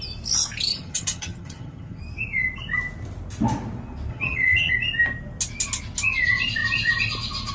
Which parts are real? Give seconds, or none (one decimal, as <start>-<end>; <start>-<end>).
0.0-0.7; 2.0-4.1; 4.7-7.5